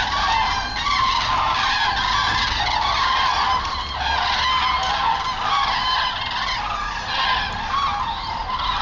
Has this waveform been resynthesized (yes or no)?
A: no